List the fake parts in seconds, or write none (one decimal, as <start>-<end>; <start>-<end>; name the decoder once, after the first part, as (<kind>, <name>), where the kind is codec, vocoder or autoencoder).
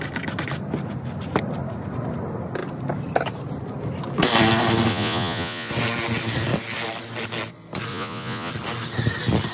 4.9-5.7 (vocoder, Vocos); 7.9-8.5